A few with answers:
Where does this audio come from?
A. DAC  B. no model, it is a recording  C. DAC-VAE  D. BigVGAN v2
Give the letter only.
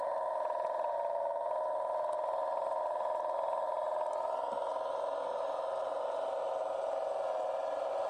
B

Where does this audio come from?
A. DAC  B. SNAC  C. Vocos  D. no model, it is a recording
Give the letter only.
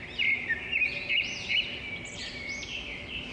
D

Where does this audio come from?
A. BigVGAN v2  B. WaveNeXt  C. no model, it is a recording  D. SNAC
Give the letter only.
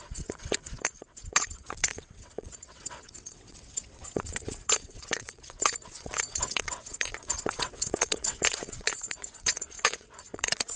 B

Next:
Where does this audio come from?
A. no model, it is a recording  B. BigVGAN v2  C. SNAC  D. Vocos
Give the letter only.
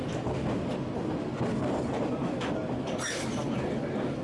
A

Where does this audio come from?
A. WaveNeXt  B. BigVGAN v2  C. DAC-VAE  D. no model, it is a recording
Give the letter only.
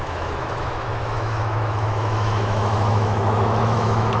C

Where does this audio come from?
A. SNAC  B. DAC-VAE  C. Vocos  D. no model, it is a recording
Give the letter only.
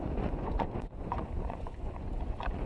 C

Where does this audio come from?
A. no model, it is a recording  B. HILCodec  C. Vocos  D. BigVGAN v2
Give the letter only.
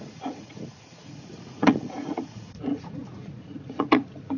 C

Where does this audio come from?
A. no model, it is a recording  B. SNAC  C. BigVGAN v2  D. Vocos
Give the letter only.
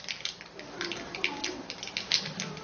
A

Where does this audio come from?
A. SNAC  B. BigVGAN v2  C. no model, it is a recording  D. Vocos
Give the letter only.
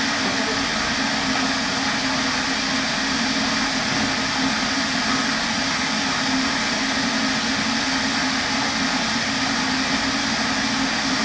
C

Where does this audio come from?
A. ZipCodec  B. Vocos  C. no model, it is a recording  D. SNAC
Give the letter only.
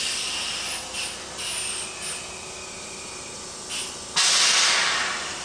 C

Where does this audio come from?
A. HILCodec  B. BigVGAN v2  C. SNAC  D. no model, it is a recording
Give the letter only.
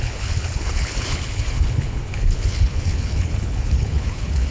A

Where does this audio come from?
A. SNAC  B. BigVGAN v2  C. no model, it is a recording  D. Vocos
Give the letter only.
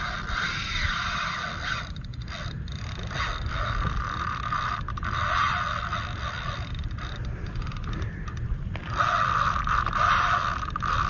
C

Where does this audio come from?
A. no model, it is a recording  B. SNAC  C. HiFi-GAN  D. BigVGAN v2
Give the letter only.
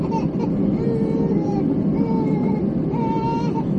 A